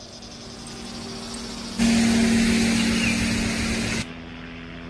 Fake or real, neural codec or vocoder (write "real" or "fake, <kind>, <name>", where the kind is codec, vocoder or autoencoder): real